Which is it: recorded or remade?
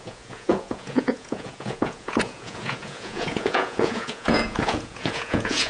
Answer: remade